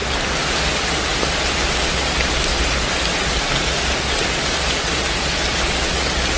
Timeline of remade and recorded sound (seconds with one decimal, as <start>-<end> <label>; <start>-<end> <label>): 0.0-6.4 recorded